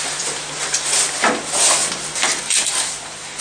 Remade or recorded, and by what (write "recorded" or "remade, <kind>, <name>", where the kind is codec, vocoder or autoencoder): recorded